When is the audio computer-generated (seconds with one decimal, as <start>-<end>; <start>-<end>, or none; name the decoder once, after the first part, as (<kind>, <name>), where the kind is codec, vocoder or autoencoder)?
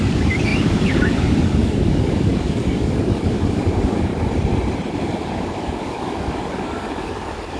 0.0-4.1 (codec, DAC); 4.9-7.6